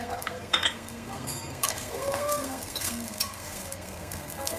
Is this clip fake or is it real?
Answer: fake